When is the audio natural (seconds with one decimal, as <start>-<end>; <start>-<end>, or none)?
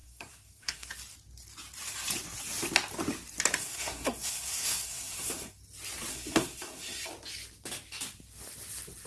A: 0.9-3.6; 5.6-6.1; 7.1-9.1